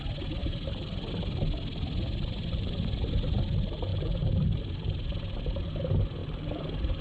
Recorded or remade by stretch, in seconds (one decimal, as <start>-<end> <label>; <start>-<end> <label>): 0.0-0.4 recorded; 0.4-1.1 remade; 1.1-2.1 recorded; 2.1-2.7 remade; 2.7-3.9 recorded; 3.9-4.6 remade; 4.6-6.2 recorded; 6.2-7.0 remade